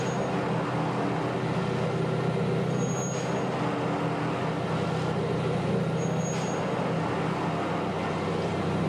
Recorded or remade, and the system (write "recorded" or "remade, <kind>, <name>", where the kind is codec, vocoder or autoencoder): recorded